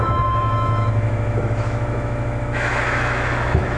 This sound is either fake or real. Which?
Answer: fake